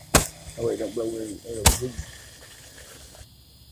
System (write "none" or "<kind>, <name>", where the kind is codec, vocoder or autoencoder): none